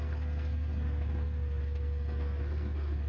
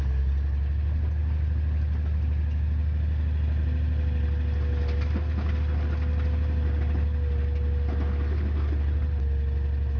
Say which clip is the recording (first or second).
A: second